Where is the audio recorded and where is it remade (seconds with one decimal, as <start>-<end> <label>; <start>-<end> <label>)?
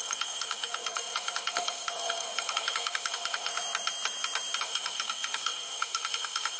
0.0-3.5 remade; 3.5-4.6 recorded; 4.6-6.6 remade